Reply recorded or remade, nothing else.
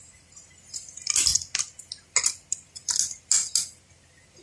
recorded